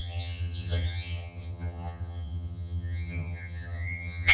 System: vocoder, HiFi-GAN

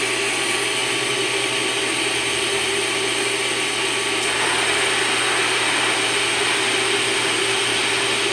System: none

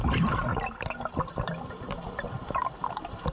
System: none